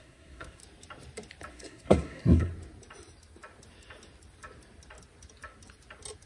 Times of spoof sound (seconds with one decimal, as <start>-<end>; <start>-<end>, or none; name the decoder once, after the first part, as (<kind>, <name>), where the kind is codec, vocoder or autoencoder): 0.0-0.6 (codec, SNAC); 1.5-2.5